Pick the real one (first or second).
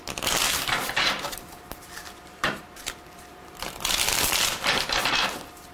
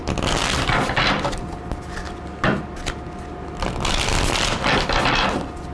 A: second